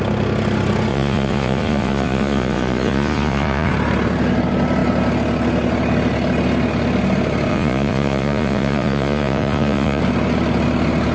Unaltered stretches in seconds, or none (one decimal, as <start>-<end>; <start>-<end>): 0.0-0.9; 3.7-7.5; 10.0-11.1